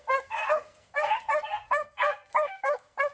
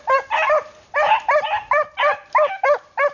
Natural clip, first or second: second